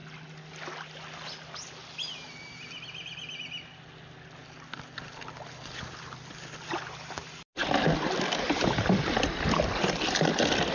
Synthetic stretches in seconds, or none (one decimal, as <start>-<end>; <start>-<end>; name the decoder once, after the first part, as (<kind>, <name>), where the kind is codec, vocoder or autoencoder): none